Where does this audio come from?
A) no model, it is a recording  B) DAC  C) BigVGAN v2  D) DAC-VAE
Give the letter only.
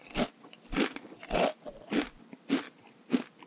A